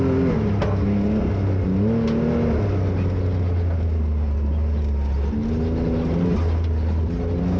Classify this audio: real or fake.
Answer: real